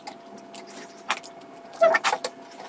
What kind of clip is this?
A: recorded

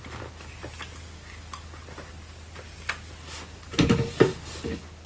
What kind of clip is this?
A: recorded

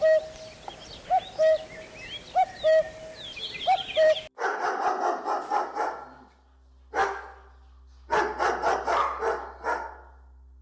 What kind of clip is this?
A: recorded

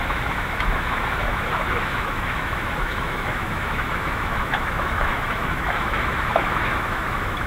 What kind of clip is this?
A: remade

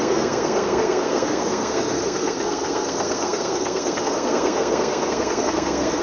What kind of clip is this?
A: remade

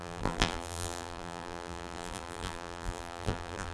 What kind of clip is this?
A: remade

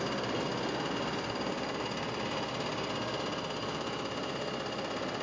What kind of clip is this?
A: recorded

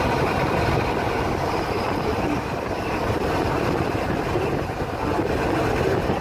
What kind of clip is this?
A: recorded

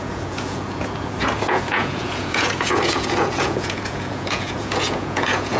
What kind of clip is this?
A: remade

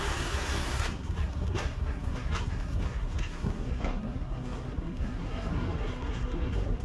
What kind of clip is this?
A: remade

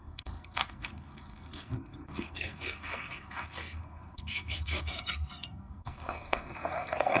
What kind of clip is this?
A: remade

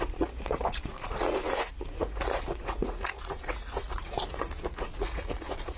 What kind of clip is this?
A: remade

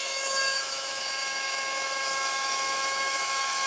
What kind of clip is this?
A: remade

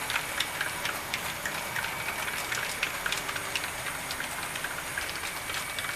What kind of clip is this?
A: recorded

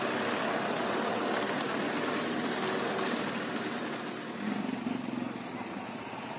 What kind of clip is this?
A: recorded